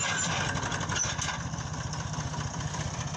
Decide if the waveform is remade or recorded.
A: recorded